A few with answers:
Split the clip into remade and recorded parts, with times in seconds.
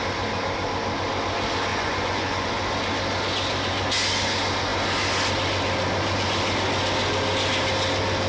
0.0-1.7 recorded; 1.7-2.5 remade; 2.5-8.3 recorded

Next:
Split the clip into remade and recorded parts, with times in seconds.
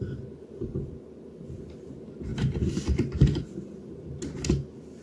0.0-2.3 recorded; 2.3-3.4 remade; 3.4-5.0 recorded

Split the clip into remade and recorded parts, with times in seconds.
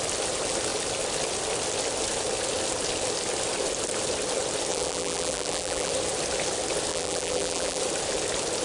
0.0-4.7 recorded; 4.7-5.9 remade; 5.9-6.9 recorded; 6.9-7.8 remade; 7.8-8.6 recorded